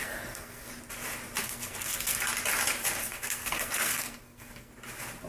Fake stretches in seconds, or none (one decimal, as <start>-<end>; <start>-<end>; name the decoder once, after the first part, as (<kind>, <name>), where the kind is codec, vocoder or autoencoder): 0.0-0.7 (codec, SNAC); 1.4-2.2; 3.0-4.7